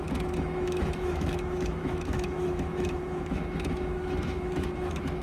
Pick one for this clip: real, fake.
fake